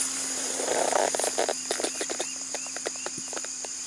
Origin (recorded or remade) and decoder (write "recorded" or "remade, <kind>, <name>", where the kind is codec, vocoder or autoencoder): remade, vocoder, BigVGAN v2